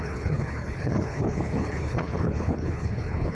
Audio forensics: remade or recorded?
remade